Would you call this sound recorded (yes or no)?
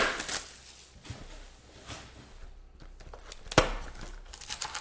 yes